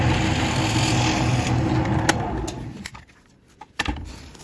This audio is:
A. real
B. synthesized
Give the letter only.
A